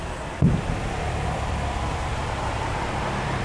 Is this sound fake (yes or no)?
yes